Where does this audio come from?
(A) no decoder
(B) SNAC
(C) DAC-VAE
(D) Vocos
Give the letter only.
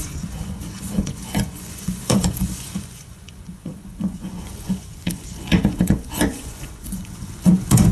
D